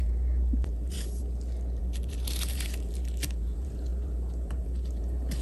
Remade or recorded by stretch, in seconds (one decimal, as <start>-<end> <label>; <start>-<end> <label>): 0.0-1.2 remade; 1.2-1.8 recorded; 1.8-5.4 remade